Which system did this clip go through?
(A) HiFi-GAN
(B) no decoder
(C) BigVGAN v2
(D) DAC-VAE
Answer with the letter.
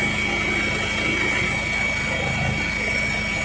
B